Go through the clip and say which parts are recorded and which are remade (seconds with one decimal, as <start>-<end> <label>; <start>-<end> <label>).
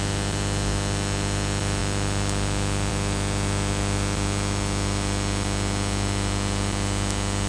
0.0-7.5 recorded